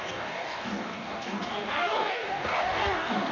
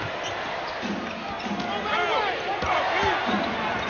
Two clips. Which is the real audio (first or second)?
second